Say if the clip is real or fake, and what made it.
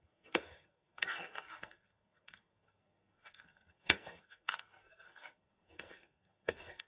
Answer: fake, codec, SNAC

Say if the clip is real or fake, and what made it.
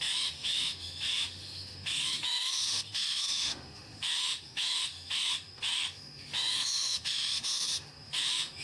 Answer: fake, autoencoder, DAC-VAE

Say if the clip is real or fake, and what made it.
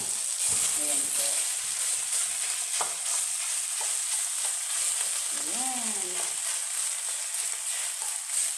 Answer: real